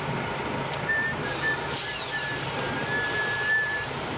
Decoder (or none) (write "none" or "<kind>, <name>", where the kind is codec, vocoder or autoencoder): none